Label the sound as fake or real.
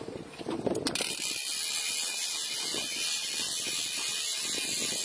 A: real